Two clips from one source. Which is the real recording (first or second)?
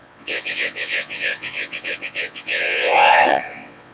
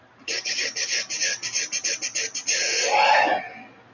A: second